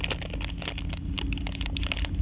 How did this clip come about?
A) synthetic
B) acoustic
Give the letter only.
B